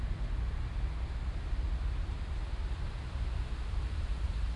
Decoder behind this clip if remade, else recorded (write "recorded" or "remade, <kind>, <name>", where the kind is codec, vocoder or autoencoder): recorded